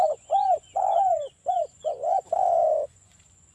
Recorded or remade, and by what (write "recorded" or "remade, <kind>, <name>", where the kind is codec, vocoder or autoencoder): remade, vocoder, Vocos